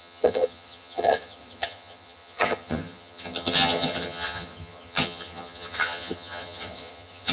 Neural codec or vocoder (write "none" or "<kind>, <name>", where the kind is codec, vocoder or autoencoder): vocoder, HiFi-GAN